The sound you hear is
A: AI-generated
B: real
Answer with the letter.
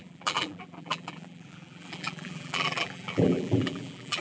A